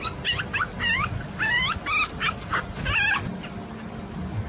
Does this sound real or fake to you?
real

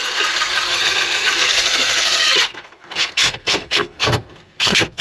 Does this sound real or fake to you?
fake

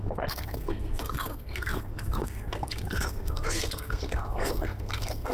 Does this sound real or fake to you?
fake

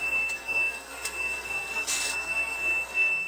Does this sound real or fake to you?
fake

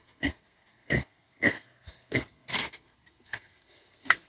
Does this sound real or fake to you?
fake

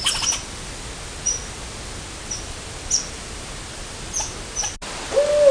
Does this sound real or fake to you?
real